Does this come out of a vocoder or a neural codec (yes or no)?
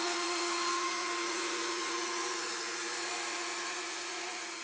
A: yes